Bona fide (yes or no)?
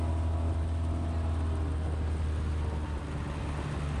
yes